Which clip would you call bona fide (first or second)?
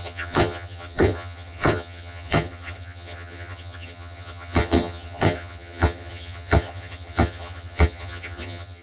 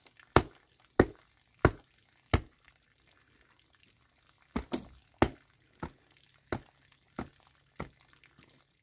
second